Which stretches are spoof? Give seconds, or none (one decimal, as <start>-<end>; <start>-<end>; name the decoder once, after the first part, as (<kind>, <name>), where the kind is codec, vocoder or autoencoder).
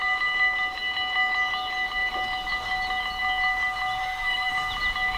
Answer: 4.0-4.5 (codec, SNAC)